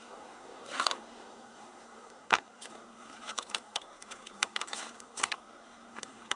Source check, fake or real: fake